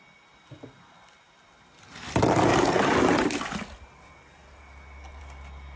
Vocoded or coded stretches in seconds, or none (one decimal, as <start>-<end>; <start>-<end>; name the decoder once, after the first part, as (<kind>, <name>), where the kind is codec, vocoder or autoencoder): none